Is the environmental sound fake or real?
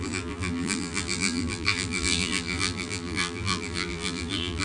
fake